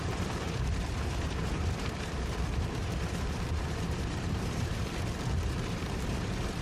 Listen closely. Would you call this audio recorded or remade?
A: remade